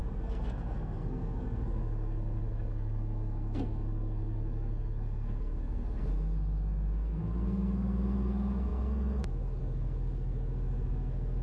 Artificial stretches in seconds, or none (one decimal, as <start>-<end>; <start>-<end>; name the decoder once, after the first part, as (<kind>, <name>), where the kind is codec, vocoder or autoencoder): 0.0-11.4 (codec, SNAC)